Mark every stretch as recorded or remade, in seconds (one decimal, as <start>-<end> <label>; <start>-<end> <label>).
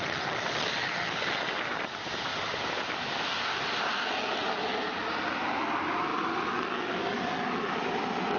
0.0-8.4 recorded